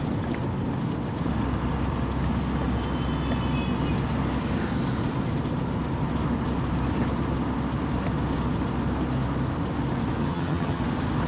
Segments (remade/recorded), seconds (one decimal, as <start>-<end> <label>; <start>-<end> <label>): 0.0-10.2 recorded; 10.2-10.8 remade; 10.8-11.3 recorded